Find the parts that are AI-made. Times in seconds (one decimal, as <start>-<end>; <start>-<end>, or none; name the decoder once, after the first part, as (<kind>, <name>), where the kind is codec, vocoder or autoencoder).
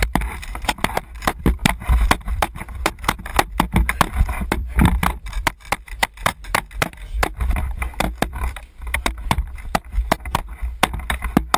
0.0-1.6 (vocoder, BigVGAN v2); 2.3-3.3; 4.1-10.4